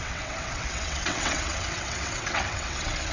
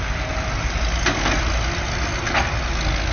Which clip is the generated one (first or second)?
first